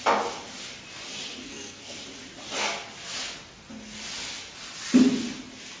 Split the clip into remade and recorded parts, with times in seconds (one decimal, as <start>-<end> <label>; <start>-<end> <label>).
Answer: 0.0-1.4 recorded; 1.4-2.0 remade; 2.0-5.8 recorded